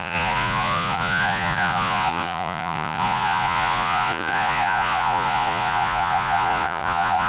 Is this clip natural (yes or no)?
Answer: no